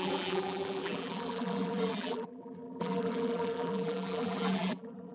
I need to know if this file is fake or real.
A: fake